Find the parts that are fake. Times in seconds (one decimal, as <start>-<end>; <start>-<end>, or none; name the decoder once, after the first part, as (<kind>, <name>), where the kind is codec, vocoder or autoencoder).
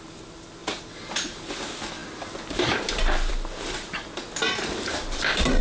none